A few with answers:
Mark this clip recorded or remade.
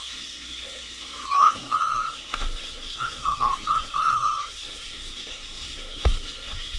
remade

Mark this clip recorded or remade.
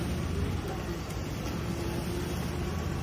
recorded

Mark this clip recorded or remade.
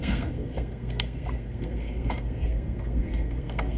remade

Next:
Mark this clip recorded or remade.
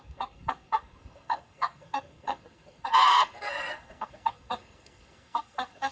remade